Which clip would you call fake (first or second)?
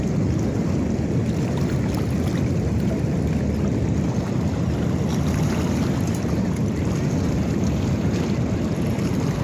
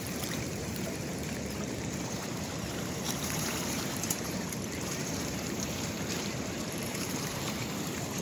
second